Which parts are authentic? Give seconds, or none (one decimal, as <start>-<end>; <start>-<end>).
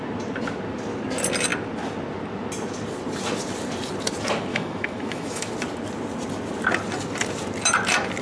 0.0-4.5; 5.5-8.2